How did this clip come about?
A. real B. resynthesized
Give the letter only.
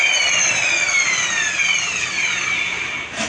A